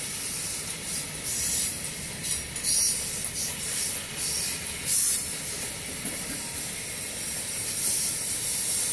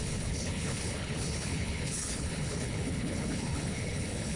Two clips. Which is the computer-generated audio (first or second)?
second